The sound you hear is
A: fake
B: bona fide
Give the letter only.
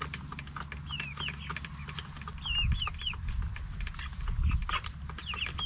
B